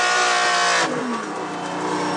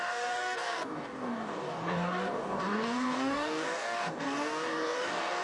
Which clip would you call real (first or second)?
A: first